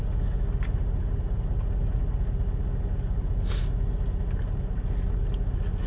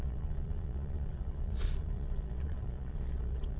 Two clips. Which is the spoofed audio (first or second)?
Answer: second